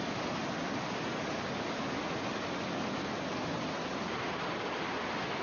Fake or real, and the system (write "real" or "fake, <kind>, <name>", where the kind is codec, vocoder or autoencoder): real